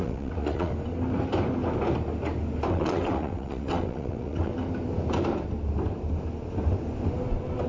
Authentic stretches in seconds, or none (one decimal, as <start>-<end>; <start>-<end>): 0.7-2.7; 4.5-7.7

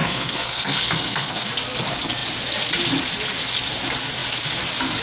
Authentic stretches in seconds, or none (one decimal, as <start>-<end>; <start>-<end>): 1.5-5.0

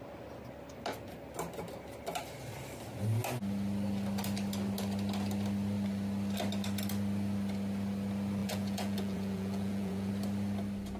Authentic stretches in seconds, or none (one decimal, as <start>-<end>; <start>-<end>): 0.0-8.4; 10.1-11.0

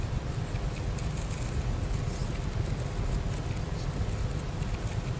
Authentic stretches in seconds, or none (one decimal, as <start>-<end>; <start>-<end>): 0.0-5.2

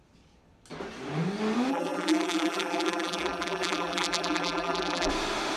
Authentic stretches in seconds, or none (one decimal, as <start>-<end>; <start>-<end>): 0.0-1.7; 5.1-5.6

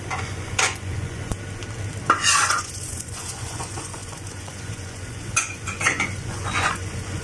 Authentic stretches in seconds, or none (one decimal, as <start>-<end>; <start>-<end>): 1.3-2.0

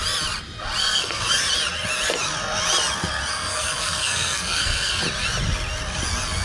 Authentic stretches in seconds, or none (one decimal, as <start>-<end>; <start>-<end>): 0.0-0.8; 1.3-3.3; 5.0-6.4